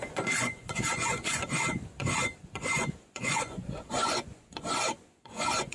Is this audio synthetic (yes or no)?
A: yes